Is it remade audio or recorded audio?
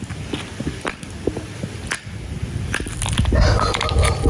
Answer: recorded